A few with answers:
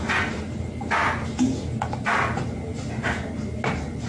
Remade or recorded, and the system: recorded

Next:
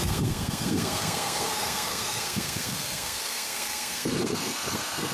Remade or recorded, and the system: remade, codec, SNAC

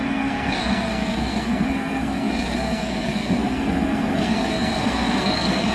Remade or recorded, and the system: remade, codec, SNAC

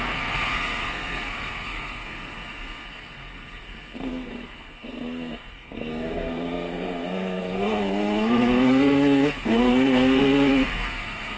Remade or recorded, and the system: remade, codec, SNAC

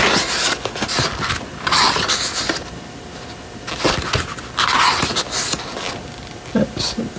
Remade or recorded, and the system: recorded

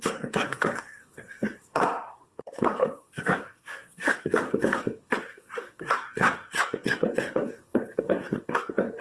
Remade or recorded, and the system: remade, codec, SNAC